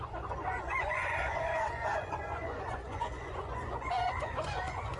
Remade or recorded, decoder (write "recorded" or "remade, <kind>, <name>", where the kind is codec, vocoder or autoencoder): remade, vocoder, Vocos